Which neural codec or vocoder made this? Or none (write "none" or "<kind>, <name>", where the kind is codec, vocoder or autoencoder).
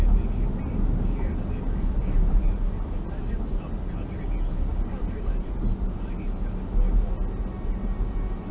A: none